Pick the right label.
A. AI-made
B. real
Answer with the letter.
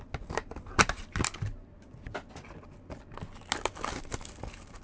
B